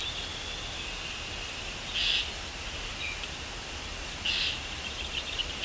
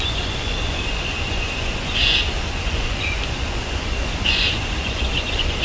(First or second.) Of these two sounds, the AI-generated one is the second